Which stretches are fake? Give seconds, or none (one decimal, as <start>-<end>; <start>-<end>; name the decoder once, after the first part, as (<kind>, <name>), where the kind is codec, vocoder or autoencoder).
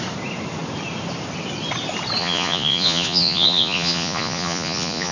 2.2-5.1 (vocoder, Vocos)